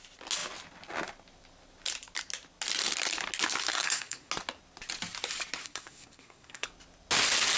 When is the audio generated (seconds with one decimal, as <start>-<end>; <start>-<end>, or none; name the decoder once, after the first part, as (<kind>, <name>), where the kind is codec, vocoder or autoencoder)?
3.6-4.3 (codec, SNAC); 5.6-6.7